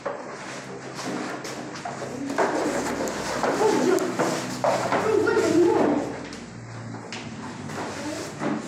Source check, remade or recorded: recorded